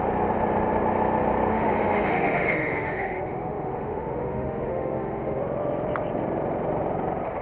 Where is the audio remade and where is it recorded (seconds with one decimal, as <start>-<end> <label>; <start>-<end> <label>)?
0.0-1.5 recorded; 1.5-5.4 remade; 5.4-7.4 recorded